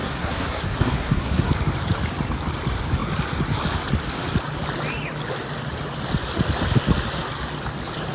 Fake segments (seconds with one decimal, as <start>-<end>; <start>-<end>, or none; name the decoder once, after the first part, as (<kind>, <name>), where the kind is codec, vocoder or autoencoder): 0.0-1.5 (codec, SNAC)